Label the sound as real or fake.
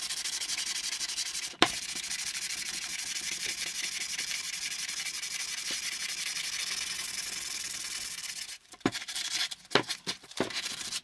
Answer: fake